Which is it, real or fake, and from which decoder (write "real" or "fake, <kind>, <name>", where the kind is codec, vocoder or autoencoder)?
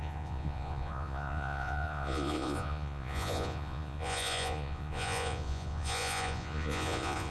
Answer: fake, vocoder, Vocos